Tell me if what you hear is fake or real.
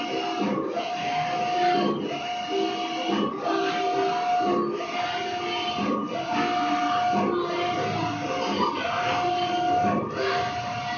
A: real